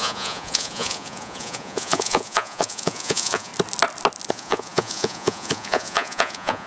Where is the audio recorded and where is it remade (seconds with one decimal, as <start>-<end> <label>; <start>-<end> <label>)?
0.0-3.5 remade; 3.5-4.3 recorded; 4.3-6.7 remade